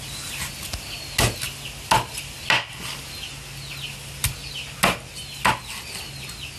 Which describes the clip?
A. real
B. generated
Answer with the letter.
A